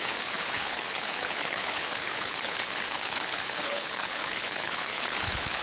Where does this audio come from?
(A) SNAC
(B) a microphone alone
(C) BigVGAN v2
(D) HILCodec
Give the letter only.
D